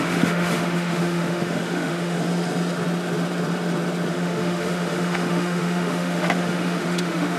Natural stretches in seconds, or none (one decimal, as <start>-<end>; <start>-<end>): 2.2-4.1